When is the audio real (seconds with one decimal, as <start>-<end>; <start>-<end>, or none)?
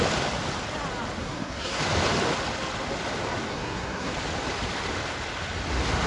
0.0-1.2; 1.8-3.5; 4.1-6.1